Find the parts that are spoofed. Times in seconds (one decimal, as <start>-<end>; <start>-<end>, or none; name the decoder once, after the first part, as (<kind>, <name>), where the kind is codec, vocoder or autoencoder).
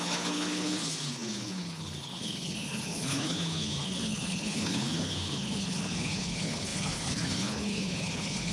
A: 0.0-8.5 (codec, HILCodec)